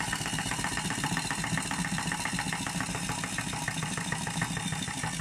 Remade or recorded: recorded